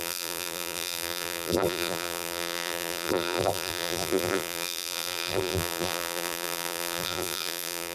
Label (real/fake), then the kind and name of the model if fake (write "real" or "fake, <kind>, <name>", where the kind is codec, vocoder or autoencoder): fake, vocoder, BigVGAN v2